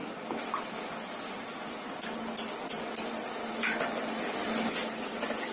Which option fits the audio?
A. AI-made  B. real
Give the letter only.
B